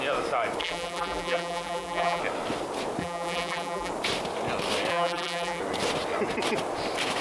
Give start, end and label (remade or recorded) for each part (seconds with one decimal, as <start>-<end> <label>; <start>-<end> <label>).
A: 0.0-0.6 recorded; 0.6-2.2 remade; 2.2-3.0 recorded; 3.0-3.9 remade; 3.9-4.9 recorded; 4.9-5.6 remade; 5.6-7.2 recorded